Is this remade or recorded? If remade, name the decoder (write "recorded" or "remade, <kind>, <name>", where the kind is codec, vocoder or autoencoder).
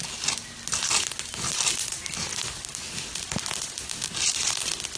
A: recorded